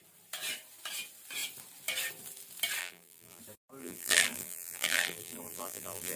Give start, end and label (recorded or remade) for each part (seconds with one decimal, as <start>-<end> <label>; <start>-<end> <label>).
0.0-2.8 recorded; 2.8-3.4 remade; 3.4-3.8 recorded; 3.8-6.2 remade